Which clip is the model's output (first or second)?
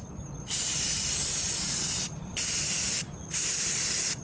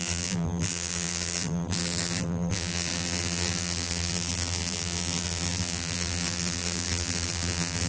second